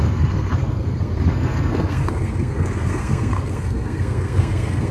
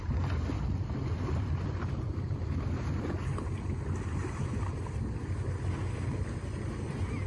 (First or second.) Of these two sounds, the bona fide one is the second